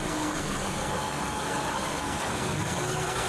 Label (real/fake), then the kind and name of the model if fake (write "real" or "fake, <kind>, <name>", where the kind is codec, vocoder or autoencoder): fake, codec, SNAC